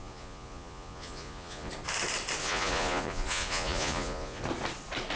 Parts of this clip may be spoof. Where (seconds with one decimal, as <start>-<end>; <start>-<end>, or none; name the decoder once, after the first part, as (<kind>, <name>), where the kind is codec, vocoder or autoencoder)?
0.0-1.7 (vocoder, Vocos); 2.4-4.4